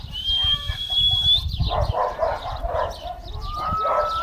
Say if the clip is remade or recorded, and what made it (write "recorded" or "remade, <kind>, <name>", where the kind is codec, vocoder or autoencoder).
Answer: remade, vocoder, BigVGAN v2